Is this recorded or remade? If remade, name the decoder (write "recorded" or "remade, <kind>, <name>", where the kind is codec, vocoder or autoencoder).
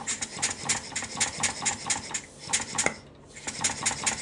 recorded